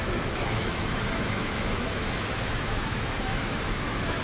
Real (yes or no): no